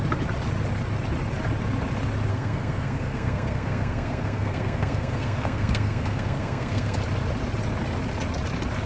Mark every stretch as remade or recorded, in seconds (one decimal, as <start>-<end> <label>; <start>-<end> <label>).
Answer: 0.0-2.3 recorded; 2.3-7.0 remade; 7.0-8.9 recorded